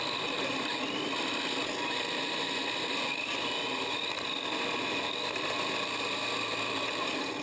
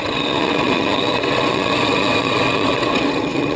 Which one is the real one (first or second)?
first